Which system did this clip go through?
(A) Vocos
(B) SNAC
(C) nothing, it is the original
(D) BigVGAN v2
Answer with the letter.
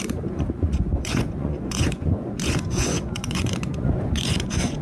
A